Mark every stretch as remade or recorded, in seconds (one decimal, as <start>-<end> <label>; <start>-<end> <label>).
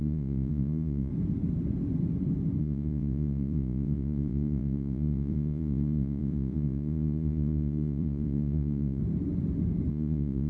0.0-1.1 remade; 1.1-2.6 recorded; 2.6-9.0 remade; 9.0-9.9 recorded; 9.9-10.5 remade